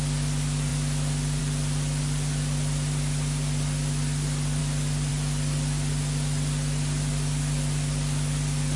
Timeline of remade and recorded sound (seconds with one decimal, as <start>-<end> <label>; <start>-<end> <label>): 0.0-8.8 recorded

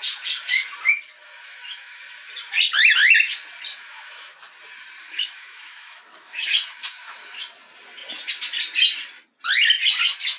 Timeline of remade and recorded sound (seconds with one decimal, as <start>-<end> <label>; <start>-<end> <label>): 0.0-1.2 recorded; 1.2-2.0 remade; 2.0-3.7 recorded; 3.7-4.4 remade; 4.4-5.0 recorded; 5.0-7.4 remade; 7.4-10.4 recorded

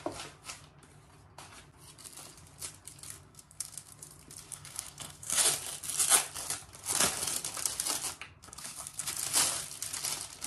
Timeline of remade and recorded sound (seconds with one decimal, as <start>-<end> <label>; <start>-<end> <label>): 0.0-3.3 recorded; 3.3-3.9 remade; 3.9-4.5 recorded; 4.5-5.4 remade; 5.4-8.4 recorded; 8.4-9.1 remade; 9.1-10.5 recorded

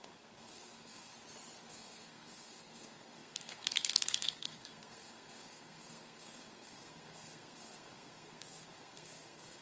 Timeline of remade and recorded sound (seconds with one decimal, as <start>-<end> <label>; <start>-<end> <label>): 0.0-1.1 remade; 1.1-1.7 recorded; 1.7-9.6 remade

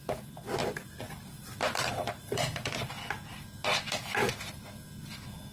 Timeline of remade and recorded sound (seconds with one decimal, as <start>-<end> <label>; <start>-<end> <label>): 0.0-0.6 recorded; 0.6-2.9 remade; 2.9-5.5 recorded